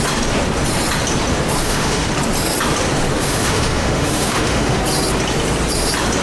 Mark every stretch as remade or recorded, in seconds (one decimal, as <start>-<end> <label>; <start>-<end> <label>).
0.0-1.6 recorded; 1.6-2.1 remade; 2.1-3.1 recorded; 3.1-4.8 remade; 4.8-6.2 recorded